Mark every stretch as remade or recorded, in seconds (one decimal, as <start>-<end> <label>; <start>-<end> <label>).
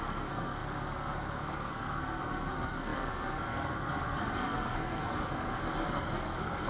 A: 0.0-6.7 remade